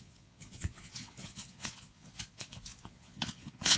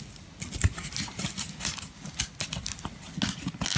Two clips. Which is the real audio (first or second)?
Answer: second